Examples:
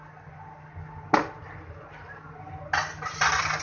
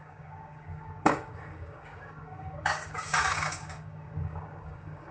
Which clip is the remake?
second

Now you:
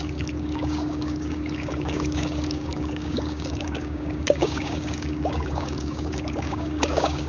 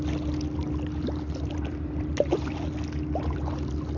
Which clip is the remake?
first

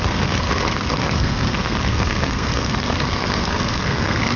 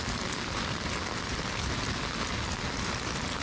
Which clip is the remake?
first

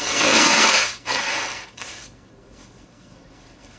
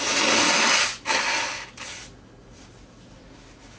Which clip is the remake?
first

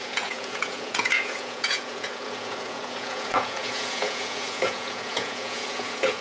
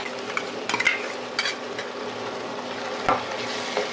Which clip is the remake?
first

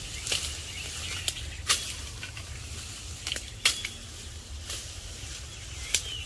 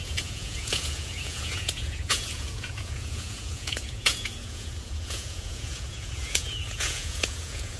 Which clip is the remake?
second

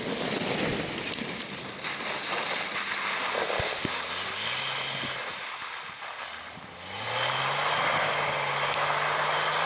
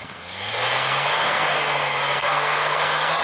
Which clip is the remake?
second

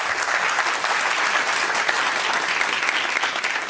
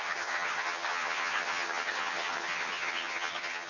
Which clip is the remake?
second